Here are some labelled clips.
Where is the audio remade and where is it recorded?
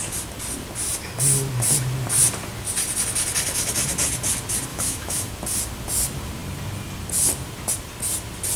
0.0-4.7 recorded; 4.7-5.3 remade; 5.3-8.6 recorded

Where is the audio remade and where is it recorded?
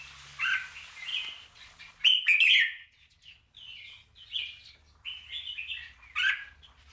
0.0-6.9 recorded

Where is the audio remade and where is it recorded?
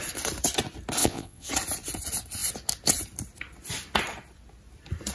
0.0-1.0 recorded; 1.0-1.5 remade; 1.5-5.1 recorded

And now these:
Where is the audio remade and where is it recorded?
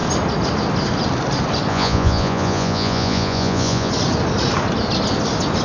0.0-1.7 recorded; 1.7-3.9 remade; 3.9-5.6 recorded